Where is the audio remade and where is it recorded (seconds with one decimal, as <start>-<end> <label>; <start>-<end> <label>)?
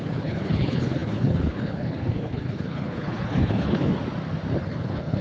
0.0-3.9 remade; 3.9-4.6 recorded; 4.6-5.2 remade